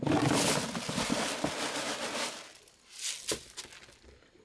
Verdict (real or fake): real